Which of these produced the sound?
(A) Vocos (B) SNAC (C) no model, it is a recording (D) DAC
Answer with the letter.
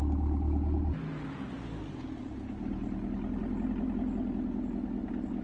C